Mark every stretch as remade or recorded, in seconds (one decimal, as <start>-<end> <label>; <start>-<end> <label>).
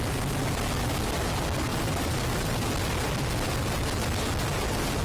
0.0-5.0 recorded